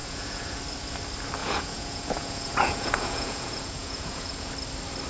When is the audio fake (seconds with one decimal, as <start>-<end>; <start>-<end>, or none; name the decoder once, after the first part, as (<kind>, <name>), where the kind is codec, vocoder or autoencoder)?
0.0-0.6 (vocoder, Vocos); 1.4-4.5